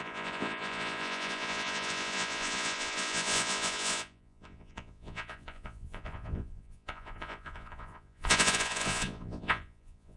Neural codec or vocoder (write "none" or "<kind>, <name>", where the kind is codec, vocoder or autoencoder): vocoder, Vocos